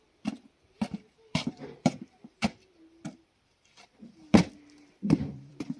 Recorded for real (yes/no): no